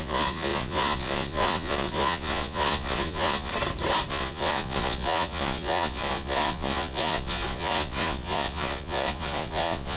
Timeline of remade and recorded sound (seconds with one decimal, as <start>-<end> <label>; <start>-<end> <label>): 0.0-3.5 remade; 3.5-4.1 recorded; 4.1-10.0 remade